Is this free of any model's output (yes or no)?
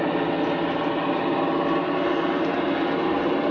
yes